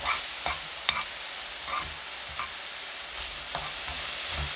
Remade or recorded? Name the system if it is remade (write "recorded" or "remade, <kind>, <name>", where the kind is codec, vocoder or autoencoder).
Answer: recorded